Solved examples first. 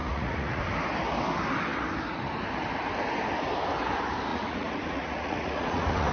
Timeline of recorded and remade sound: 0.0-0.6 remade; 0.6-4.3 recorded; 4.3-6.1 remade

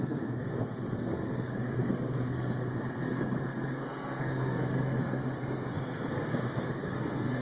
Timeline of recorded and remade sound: 0.0-7.4 remade

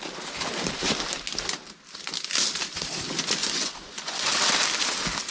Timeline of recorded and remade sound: 0.0-3.4 recorded; 3.4-4.3 remade; 4.3-5.3 recorded

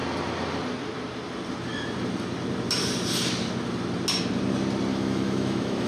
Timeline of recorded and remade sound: 0.0-4.9 recorded; 4.9-5.9 remade

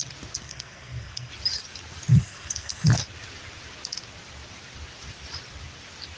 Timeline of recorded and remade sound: 0.0-0.4 recorded; 0.4-1.3 remade; 1.3-2.1 recorded; 2.1-2.9 remade; 2.9-6.2 recorded

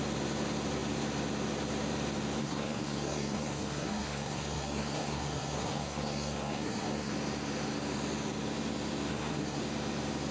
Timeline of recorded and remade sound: 0.0-2.4 recorded; 2.4-7.1 remade; 7.1-9.1 recorded; 9.1-9.6 remade; 9.6-10.3 recorded